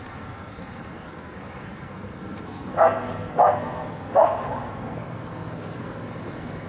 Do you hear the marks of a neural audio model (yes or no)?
yes